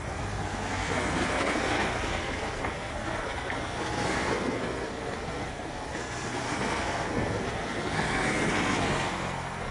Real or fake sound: fake